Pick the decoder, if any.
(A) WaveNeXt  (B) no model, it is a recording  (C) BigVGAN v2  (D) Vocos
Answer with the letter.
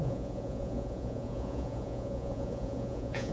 D